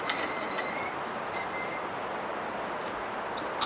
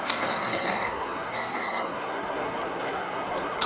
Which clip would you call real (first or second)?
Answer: first